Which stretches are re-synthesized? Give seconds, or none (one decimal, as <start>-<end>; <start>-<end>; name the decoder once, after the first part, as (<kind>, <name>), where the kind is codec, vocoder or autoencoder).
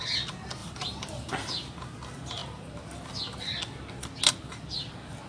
0.6-1.3 (vocoder, BigVGAN v2)